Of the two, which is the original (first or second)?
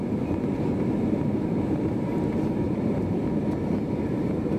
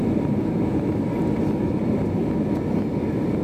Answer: second